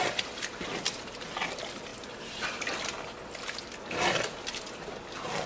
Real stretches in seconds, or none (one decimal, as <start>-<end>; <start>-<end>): 0.0-5.5